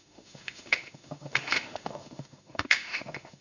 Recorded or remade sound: remade